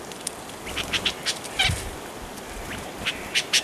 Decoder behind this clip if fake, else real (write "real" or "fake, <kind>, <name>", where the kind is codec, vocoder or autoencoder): real